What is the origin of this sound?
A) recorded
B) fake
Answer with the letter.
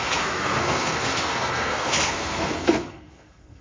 B